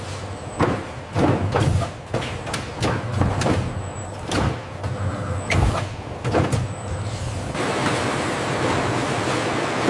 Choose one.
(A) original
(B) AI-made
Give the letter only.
A